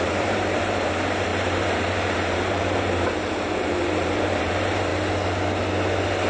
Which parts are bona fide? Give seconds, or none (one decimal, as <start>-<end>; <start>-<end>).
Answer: 4.9-6.3